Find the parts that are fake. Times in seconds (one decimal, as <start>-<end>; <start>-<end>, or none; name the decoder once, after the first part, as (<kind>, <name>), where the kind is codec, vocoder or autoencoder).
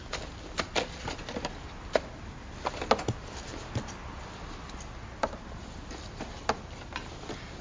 none